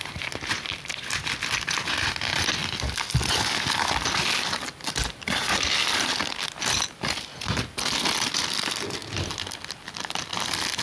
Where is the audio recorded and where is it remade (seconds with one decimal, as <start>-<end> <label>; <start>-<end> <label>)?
0.0-10.8 recorded